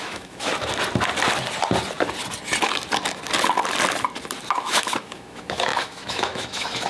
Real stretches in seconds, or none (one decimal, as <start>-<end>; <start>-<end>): 0.5-4.5